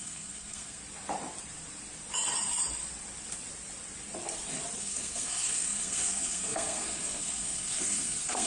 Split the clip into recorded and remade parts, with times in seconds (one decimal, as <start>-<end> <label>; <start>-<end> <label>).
0.0-0.8 remade; 0.8-4.8 recorded; 4.8-8.5 remade